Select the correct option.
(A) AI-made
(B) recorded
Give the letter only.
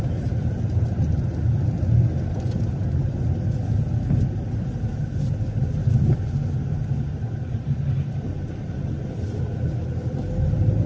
B